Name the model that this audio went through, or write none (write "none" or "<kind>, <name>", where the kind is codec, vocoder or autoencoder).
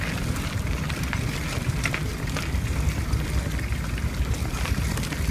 none